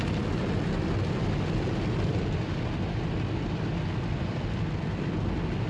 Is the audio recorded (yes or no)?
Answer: yes